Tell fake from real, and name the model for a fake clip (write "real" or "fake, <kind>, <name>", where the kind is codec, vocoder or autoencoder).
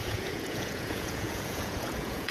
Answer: fake, vocoder, Vocos